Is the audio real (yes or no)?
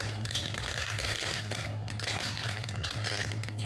no